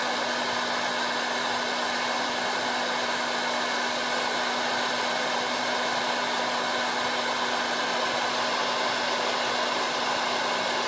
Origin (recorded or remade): recorded